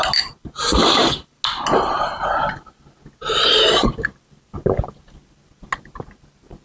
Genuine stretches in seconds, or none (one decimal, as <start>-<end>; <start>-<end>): 0.0-6.6